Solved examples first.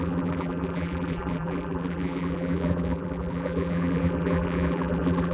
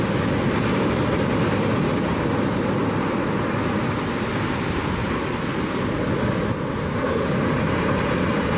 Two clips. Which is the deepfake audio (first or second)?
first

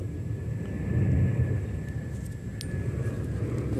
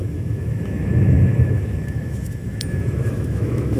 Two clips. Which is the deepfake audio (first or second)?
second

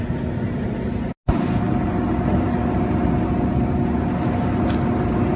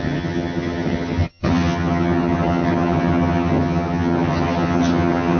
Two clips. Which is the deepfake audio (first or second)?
second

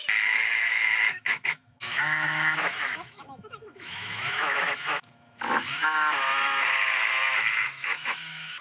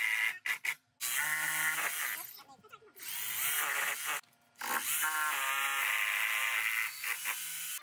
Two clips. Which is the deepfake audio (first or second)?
first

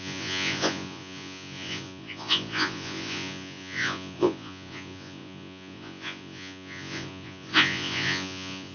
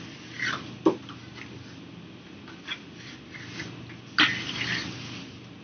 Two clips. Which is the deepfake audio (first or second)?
first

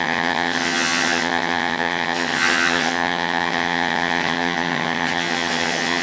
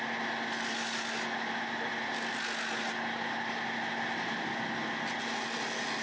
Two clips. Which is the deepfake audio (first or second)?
first